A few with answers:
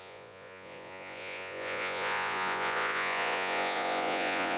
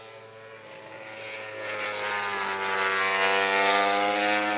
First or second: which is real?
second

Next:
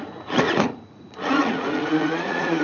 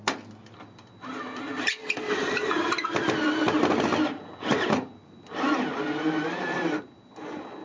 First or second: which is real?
second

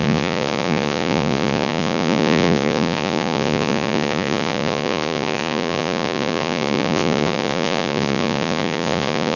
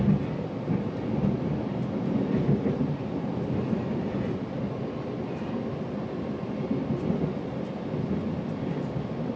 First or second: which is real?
second